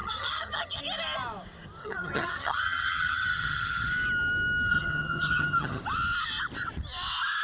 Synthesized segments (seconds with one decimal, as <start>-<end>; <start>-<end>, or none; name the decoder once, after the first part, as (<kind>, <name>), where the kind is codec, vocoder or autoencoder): 0.0-0.8 (vocoder, HiFi-GAN); 1.8-3.9; 4.7-5.8